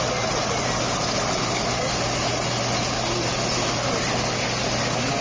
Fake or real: real